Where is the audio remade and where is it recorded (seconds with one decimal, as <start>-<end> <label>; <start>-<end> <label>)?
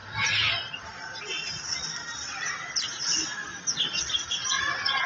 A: 0.0-1.2 remade; 1.2-5.1 recorded